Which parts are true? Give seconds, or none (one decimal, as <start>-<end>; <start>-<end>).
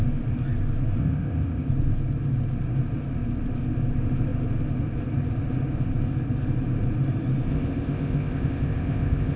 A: 0.0-1.0; 1.7-7.5